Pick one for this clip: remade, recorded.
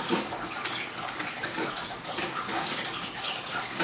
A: remade